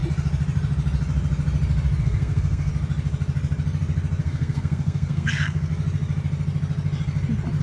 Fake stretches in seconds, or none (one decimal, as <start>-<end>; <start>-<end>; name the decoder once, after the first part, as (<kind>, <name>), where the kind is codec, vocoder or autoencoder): 2.0-2.7 (codec, SNAC); 4.2-5.7